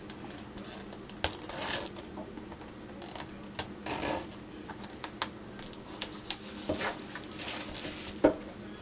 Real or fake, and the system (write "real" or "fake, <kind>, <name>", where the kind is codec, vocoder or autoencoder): real